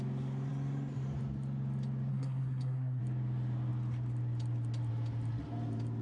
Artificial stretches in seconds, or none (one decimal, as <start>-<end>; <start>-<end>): 2.1-3.0